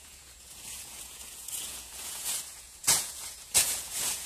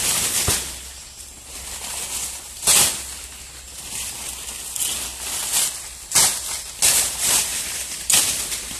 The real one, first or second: second